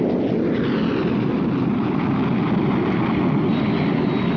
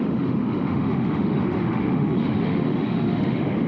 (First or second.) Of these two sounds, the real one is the first